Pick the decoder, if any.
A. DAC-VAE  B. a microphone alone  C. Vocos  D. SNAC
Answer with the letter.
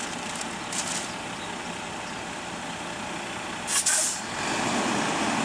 B